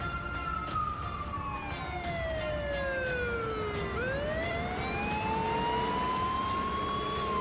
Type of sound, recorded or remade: recorded